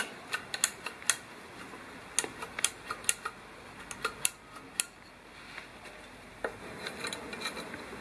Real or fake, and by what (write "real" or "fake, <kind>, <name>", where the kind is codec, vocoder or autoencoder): real